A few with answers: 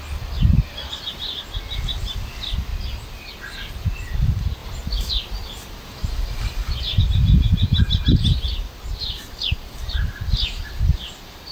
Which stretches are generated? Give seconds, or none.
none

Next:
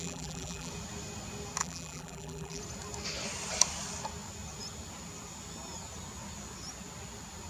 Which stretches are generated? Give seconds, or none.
0.0-0.7 (vocoder, BigVGAN v2); 1.6-2.6

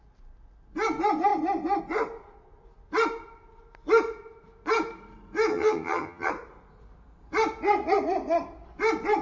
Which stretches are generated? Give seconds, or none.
5.5-6.3 (vocoder, HiFi-GAN)

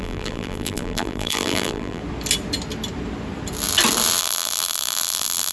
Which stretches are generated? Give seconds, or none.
0.0-2.0 (vocoder, BigVGAN v2); 4.2-5.5

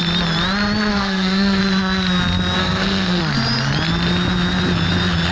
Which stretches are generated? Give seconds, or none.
0.9-1.6 (codec, SNAC); 2.6-3.2